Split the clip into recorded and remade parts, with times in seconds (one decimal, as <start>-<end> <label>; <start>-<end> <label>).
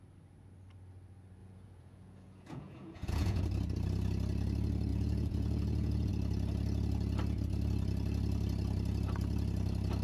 0.0-1.4 recorded; 1.4-3.4 remade; 3.4-4.9 recorded; 4.9-6.1 remade; 6.1-10.0 recorded